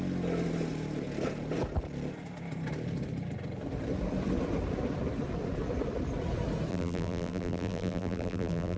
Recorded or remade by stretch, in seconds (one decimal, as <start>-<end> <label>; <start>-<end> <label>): 0.0-6.7 recorded; 6.7-8.8 remade